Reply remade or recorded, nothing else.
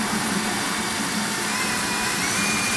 remade